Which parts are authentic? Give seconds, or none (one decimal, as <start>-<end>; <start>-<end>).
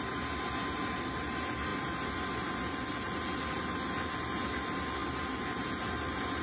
0.0-6.4